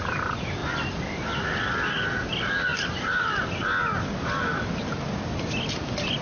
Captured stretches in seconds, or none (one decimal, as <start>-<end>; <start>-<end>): 0.0-0.6; 1.4-2.7; 5.7-6.2